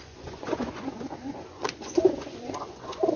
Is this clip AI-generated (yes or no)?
yes